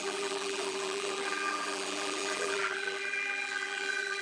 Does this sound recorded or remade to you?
remade